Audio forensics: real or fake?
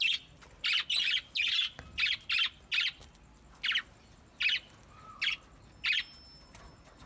real